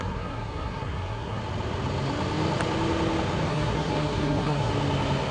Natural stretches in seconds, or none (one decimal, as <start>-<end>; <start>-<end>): 1.4-3.5; 4.7-5.3